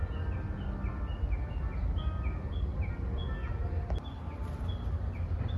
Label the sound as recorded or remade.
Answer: recorded